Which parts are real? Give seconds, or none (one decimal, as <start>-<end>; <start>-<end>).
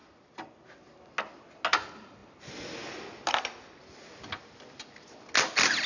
0.0-5.9